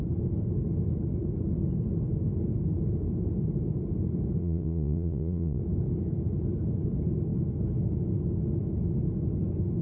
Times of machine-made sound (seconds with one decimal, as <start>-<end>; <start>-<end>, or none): 4.4-5.6